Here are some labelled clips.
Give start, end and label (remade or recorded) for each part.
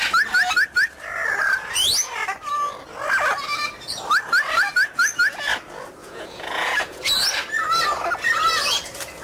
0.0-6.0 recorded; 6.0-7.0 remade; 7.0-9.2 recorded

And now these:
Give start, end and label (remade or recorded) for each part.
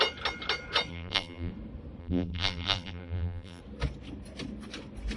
0.0-0.9 recorded; 0.9-1.5 remade; 1.5-2.0 recorded; 2.0-3.6 remade; 3.6-5.2 recorded